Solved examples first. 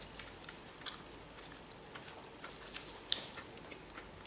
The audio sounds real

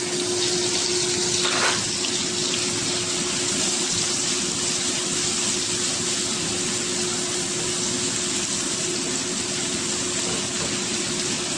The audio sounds real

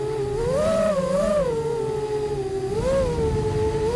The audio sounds real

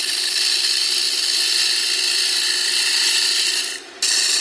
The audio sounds real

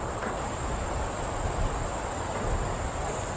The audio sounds real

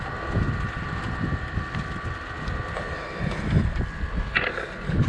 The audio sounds real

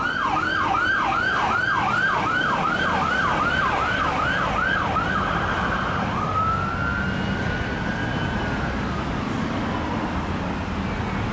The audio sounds real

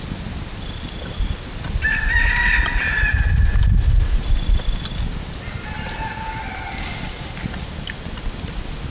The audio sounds real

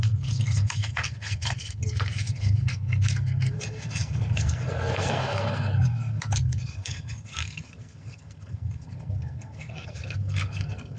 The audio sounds fake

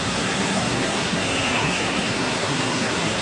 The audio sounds fake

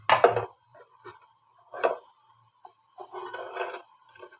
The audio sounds real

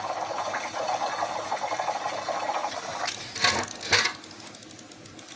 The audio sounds real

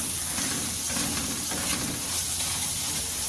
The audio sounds real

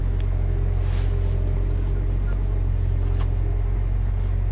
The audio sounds real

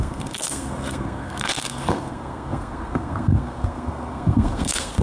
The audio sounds fake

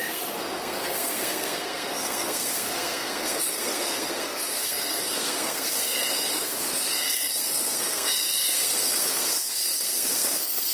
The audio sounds fake